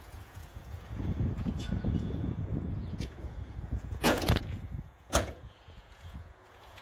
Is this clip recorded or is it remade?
remade